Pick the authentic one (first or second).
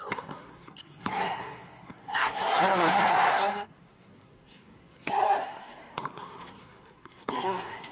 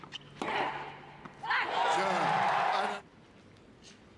second